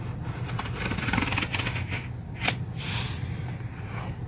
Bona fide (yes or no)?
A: yes